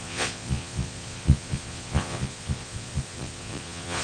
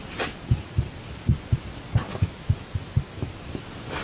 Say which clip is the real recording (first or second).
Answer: second